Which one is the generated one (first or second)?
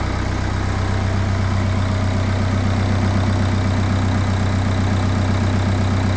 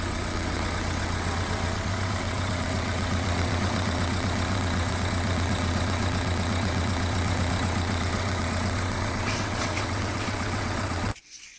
second